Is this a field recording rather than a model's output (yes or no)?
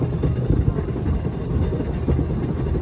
yes